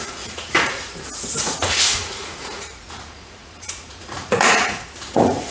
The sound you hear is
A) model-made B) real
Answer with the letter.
A